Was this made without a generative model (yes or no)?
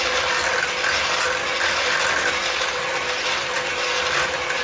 yes